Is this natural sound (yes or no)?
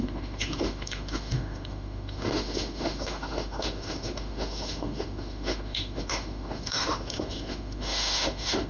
no